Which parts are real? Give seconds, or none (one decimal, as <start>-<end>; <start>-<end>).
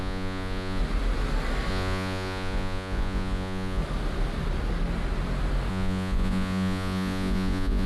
0.8-1.7; 3.8-5.7